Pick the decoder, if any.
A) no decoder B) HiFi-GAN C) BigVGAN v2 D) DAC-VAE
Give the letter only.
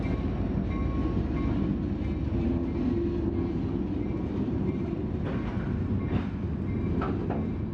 A